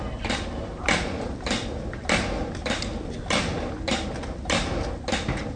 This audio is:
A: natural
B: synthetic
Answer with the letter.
A